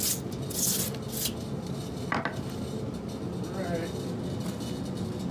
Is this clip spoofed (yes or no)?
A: no